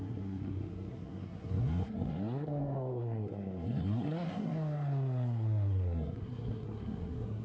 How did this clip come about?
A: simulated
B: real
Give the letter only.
A